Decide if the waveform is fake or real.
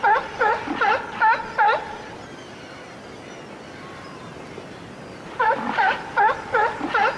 real